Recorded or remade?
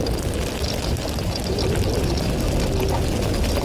recorded